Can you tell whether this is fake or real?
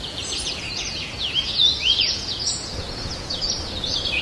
fake